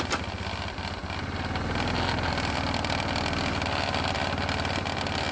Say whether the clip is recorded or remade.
recorded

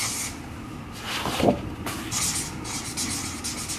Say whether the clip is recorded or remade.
recorded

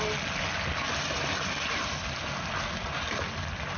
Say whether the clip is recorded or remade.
recorded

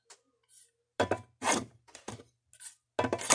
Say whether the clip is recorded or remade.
recorded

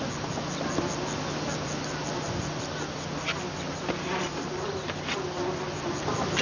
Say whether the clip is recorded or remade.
recorded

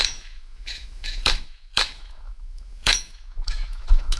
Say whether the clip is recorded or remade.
remade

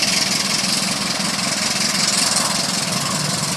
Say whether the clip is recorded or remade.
recorded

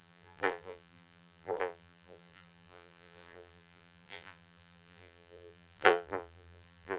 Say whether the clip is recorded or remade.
remade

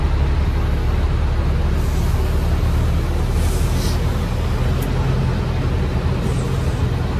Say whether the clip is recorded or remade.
recorded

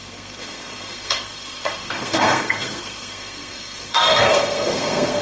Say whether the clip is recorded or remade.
remade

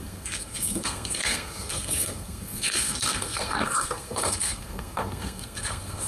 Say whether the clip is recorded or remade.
remade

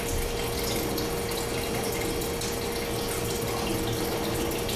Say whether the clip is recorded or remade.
recorded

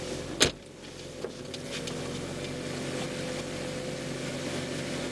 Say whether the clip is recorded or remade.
recorded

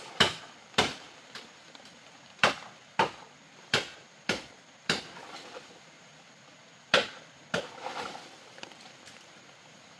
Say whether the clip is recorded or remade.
remade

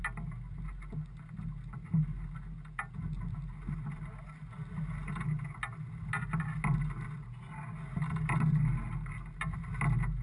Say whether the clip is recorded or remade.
recorded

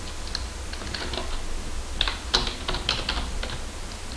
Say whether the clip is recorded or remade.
recorded